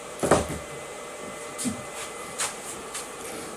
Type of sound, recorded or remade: remade